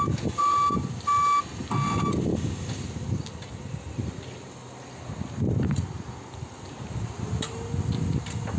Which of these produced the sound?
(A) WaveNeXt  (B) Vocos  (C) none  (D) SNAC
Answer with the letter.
C